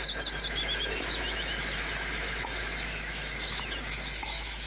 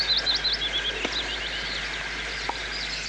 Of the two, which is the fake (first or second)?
first